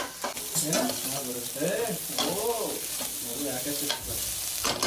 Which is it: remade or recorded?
recorded